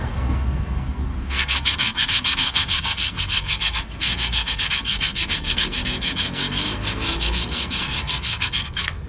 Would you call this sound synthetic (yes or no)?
yes